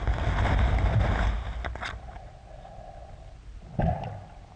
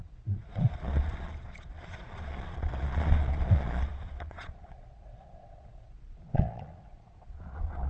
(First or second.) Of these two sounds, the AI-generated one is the second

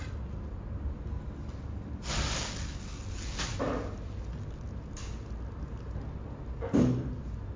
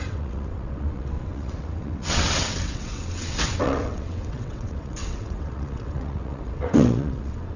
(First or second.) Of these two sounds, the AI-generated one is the second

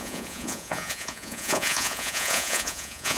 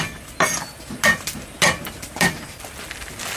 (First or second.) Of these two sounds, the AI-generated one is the first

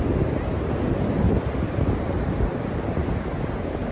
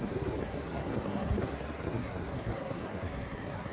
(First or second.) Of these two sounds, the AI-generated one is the second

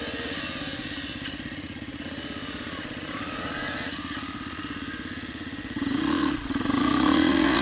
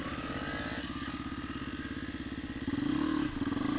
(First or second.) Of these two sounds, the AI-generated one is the first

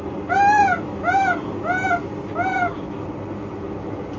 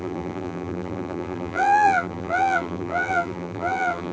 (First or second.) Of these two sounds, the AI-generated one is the second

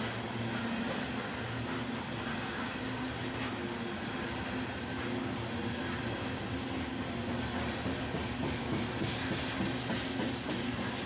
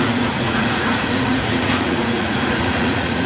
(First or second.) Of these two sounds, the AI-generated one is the second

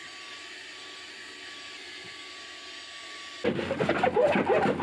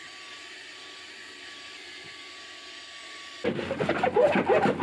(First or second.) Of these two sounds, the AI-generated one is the second